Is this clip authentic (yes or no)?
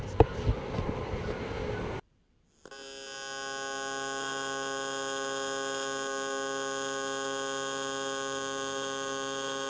yes